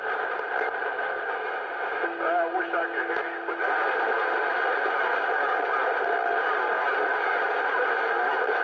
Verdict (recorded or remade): recorded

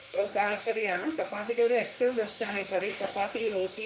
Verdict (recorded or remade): remade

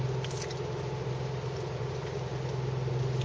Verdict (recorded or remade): recorded